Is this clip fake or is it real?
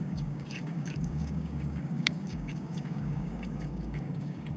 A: fake